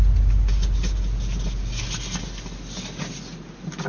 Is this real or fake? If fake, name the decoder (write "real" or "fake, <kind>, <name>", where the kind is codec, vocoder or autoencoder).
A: real